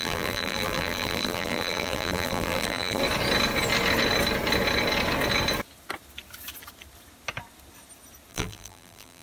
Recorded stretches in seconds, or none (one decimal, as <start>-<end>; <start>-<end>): 3.0-8.3